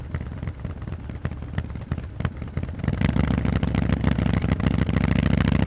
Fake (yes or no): no